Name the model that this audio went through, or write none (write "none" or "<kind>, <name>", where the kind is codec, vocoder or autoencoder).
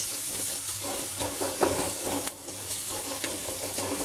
codec, DAC